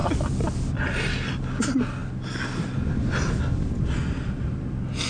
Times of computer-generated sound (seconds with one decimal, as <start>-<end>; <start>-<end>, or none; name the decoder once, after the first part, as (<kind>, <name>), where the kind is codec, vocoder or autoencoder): none